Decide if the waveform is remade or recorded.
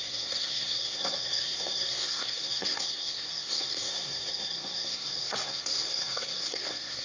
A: remade